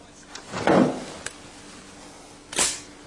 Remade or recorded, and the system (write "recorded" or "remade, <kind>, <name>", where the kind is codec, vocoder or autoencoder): recorded